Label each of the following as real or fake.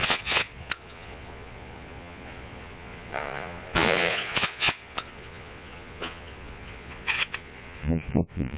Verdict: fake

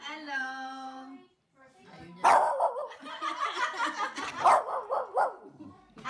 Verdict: fake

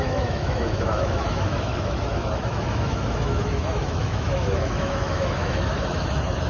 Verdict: fake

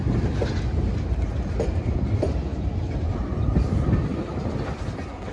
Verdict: real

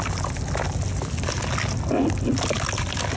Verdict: real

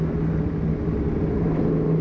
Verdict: real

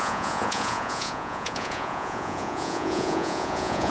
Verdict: fake